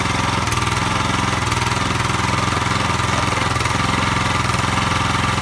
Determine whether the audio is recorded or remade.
recorded